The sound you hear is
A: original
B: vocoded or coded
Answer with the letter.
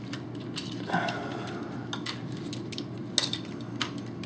A